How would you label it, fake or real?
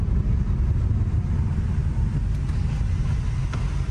real